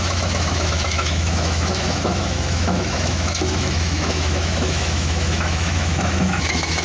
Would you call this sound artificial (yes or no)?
yes